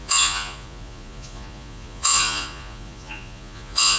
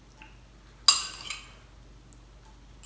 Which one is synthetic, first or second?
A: first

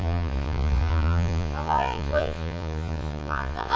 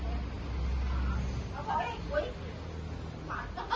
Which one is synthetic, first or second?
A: first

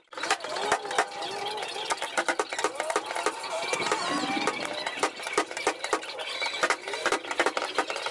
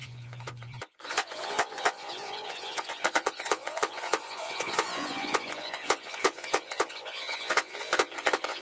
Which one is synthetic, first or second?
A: second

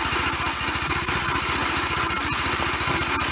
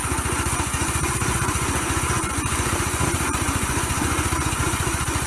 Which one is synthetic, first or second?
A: second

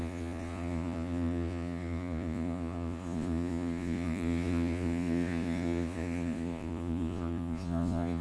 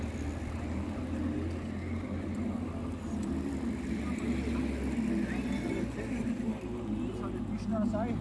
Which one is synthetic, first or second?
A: first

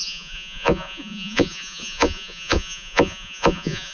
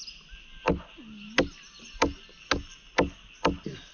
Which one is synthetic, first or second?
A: first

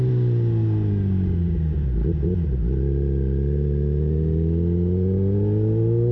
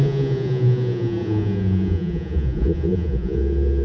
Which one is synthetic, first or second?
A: second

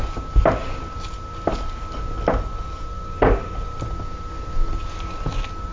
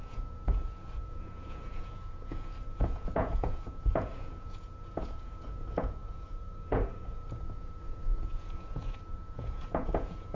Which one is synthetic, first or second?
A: second